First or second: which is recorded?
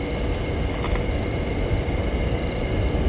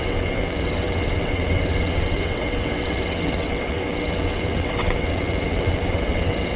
first